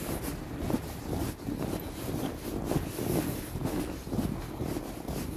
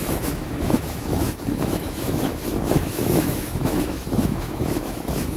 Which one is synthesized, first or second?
second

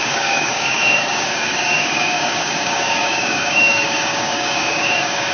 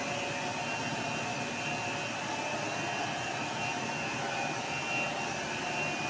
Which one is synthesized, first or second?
first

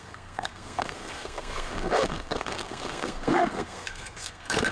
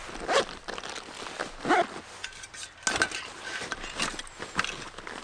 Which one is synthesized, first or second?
first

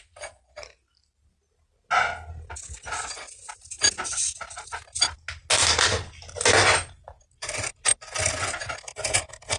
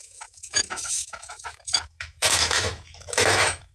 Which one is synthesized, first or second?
second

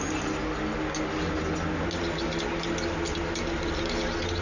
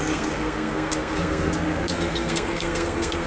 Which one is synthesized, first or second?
second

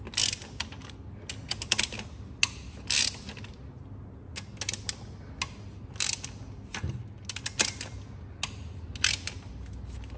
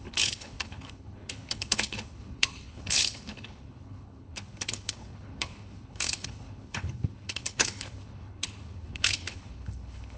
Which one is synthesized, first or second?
second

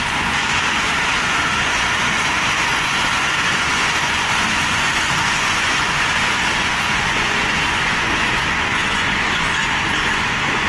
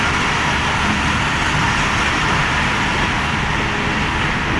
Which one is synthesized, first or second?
first